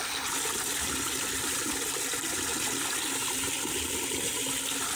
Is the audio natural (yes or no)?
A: yes